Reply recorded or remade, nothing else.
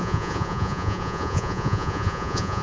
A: remade